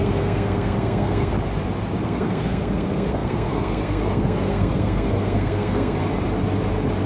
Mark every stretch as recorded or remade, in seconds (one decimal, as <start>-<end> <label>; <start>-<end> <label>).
0.0-1.3 remade; 1.3-2.0 recorded; 2.0-6.0 remade; 6.0-7.1 recorded